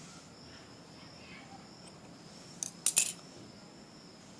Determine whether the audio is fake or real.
real